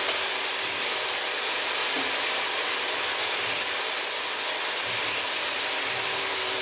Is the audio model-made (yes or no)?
yes